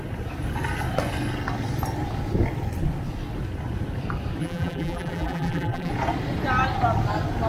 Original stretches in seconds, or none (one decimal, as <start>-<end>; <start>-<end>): 0.0-4.4; 5.9-7.5